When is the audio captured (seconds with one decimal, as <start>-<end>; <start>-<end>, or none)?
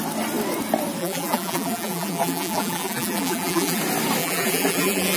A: 0.0-1.0; 3.8-4.2